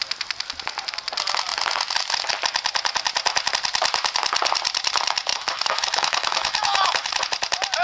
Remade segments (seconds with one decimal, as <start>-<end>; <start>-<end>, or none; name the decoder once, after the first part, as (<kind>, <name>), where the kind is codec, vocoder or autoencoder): 5.3-7.2 (autoencoder, DAC-VAE)